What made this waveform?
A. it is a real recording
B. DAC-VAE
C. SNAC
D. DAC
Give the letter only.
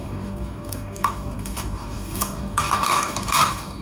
D